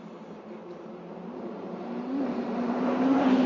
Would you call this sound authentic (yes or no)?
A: no